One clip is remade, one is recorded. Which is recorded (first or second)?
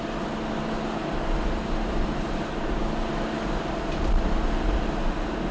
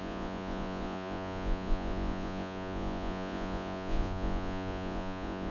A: first